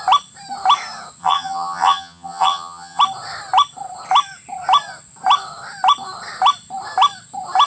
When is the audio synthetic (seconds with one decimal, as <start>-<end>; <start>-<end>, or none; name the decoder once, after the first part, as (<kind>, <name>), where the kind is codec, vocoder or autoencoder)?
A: 1.2-3.0 (vocoder, HiFi-GAN)